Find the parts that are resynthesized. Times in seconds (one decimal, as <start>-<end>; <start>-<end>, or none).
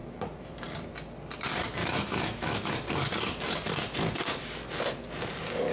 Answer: 1.8-2.7